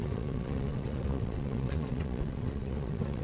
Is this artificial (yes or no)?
yes